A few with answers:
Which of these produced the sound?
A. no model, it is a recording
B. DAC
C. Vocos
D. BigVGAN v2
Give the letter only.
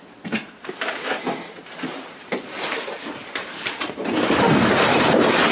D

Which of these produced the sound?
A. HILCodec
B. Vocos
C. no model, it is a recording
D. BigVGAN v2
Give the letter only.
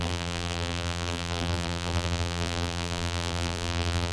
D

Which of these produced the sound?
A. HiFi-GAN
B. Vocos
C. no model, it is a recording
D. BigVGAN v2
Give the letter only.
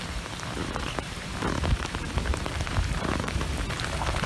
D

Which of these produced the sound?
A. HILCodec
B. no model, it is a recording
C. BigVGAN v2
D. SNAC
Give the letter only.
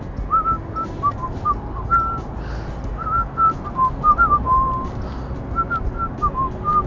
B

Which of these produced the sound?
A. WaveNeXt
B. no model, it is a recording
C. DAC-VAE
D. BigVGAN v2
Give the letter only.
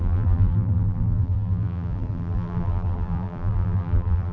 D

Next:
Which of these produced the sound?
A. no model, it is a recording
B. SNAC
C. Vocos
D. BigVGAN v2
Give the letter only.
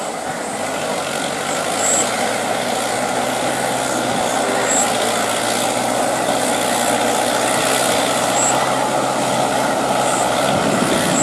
A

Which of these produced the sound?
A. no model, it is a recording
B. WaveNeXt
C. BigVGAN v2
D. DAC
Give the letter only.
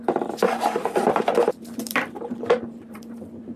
C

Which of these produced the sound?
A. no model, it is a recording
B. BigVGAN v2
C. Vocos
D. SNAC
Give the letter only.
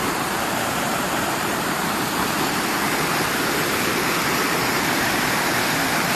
B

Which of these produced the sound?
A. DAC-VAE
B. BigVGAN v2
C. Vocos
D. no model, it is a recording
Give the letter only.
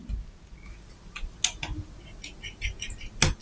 D